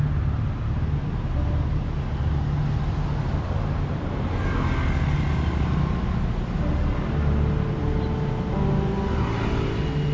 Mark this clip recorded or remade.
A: recorded